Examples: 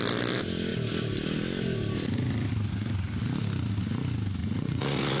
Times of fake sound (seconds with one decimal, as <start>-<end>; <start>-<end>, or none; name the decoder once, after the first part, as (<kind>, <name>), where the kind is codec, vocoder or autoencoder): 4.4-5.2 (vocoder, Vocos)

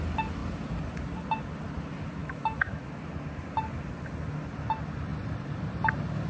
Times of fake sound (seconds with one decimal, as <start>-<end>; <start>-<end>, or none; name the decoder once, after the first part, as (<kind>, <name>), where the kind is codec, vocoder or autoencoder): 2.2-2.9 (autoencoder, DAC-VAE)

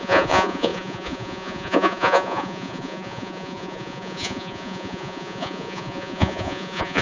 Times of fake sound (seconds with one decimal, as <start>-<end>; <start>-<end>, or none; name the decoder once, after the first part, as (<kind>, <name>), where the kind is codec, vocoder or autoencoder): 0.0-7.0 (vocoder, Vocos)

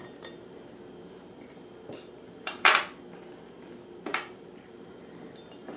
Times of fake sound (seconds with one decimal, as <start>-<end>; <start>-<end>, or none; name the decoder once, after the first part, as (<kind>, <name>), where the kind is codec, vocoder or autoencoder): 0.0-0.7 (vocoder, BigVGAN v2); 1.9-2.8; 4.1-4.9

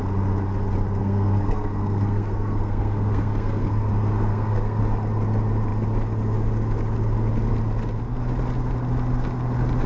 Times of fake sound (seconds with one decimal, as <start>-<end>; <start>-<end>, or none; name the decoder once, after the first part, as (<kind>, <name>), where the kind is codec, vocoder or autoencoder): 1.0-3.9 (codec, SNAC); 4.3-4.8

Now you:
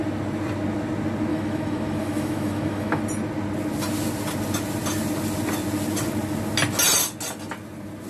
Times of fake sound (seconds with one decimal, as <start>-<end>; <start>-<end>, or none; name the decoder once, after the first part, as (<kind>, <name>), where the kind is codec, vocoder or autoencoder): 1.3-3.0 (autoencoder, DAC-VAE)